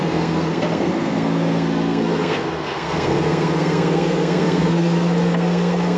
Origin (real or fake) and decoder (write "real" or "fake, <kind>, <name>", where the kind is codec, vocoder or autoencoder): fake, codec, SNAC